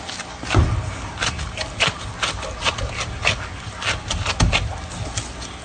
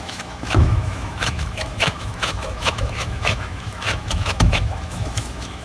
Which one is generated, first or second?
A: second